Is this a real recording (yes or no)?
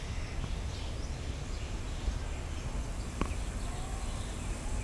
yes